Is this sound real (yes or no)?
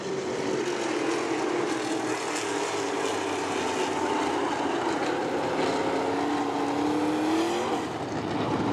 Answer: yes